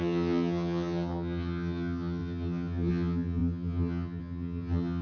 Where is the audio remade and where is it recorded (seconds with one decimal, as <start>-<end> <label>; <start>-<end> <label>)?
0.0-5.0 remade